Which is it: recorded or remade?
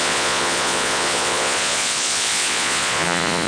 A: remade